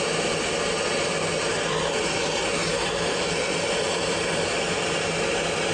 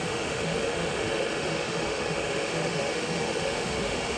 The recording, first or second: first